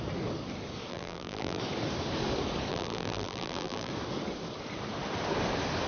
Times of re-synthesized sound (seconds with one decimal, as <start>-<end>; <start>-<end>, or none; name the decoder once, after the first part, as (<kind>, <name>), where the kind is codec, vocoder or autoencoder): 0.9-1.6 (vocoder, BigVGAN v2); 2.7-3.9